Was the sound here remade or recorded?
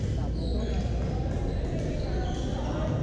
recorded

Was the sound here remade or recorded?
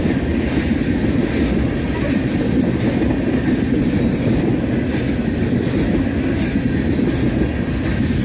recorded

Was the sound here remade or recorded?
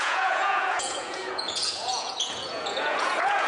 remade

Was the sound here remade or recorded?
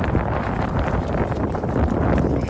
recorded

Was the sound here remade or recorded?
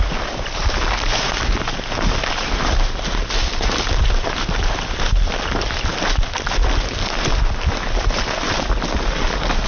recorded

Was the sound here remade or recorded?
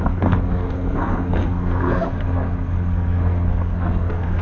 remade